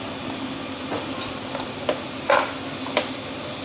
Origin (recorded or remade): recorded